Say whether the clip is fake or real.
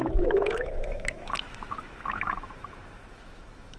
fake